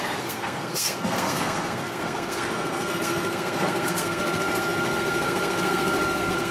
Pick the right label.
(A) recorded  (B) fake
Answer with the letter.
B